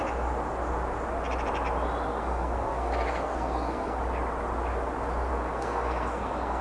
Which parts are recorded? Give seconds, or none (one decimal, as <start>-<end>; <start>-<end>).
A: 0.0-2.1; 4.0-5.3